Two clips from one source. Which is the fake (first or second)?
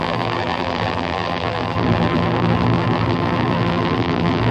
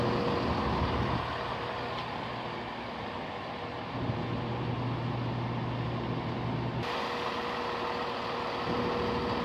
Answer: first